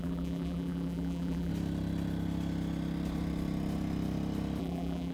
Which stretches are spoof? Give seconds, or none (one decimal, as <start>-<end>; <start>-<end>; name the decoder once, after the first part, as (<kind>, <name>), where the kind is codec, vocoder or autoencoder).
0.0-1.5 (vocoder, BigVGAN v2); 4.6-5.1